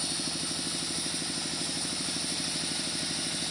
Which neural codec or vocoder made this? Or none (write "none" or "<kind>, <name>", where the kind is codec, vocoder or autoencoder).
none